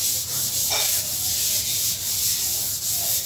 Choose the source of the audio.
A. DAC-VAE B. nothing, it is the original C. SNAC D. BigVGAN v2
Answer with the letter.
B